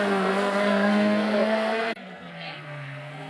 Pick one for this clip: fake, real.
fake